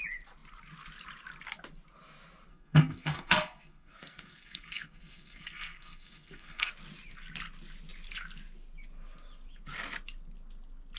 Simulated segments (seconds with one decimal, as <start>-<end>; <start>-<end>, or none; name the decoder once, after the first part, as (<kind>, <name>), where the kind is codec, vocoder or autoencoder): 2.5-6.7 (codec, SNAC)